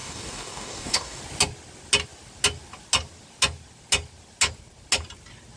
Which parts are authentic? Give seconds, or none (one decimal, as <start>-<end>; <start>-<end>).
1.2-5.6